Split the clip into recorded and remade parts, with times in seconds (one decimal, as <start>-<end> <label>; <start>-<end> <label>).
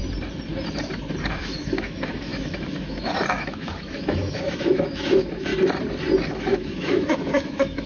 0.0-1.4 recorded; 1.4-5.5 remade; 5.5-6.3 recorded; 6.3-7.9 remade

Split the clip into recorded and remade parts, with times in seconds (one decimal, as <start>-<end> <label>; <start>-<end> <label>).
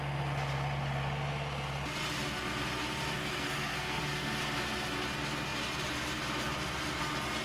0.0-3.2 recorded; 3.2-4.0 remade; 4.0-7.4 recorded